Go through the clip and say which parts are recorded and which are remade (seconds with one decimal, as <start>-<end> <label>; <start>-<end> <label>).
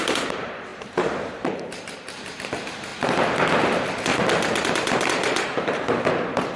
0.0-2.9 remade; 2.9-3.5 recorded; 3.5-4.1 remade; 4.1-4.7 recorded; 4.7-6.6 remade